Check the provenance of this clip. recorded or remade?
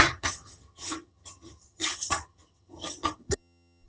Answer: remade